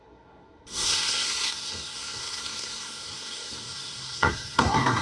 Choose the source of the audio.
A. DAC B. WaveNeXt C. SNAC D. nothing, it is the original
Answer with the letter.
C